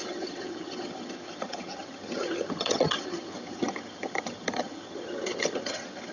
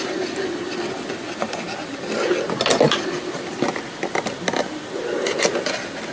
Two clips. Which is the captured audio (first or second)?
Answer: second